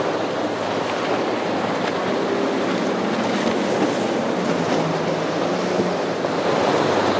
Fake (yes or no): no